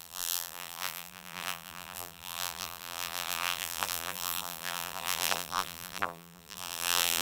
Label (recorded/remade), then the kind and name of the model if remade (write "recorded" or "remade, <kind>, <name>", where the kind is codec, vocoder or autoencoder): remade, vocoder, BigVGAN v2